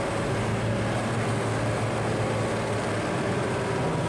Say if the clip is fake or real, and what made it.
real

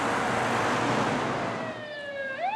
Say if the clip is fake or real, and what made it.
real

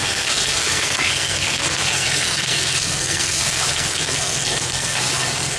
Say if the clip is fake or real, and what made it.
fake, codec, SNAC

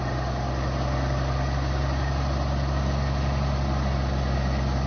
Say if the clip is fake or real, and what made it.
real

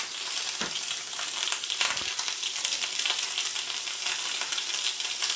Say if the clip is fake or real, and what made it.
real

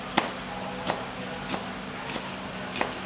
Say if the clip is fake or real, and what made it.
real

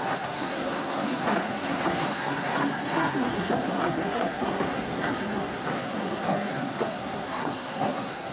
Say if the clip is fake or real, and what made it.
fake, codec, SNAC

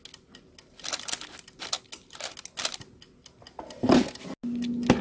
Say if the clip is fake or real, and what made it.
real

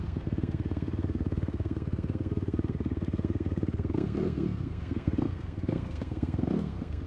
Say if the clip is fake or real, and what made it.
fake, codec, SNAC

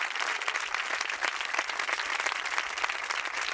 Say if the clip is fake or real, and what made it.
real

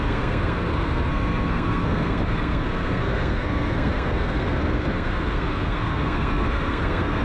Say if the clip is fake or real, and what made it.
fake, codec, SNAC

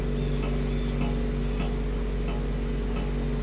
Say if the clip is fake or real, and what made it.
real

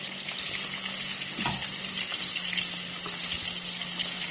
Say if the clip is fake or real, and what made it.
real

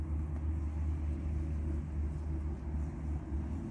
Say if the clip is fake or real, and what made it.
real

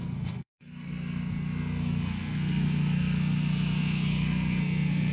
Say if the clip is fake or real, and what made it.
fake, codec, SNAC